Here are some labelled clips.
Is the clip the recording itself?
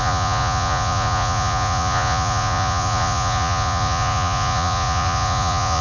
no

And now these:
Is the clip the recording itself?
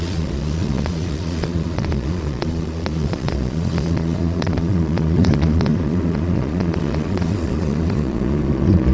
no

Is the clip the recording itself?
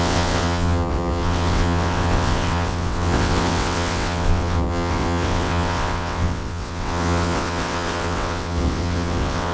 no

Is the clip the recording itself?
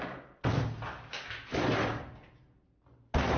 yes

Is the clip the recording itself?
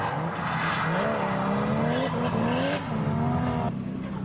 yes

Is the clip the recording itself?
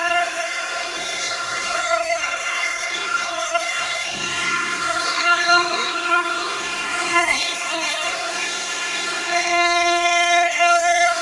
no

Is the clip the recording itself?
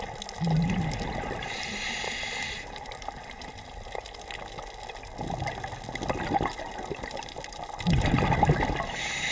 yes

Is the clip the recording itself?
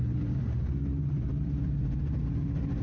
yes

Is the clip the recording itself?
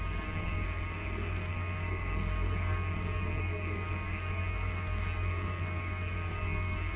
no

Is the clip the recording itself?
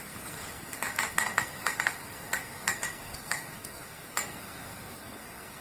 no